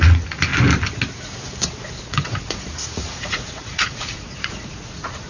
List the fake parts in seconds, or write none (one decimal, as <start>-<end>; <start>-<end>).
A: 0.0-0.5; 2.1-5.3